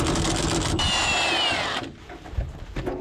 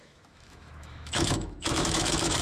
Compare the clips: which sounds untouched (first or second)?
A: first